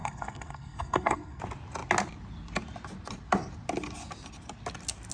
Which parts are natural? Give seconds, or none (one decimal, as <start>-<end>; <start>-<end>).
1.4-5.1